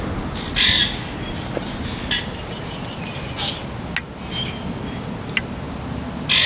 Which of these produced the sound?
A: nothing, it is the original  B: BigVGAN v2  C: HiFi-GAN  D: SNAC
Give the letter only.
A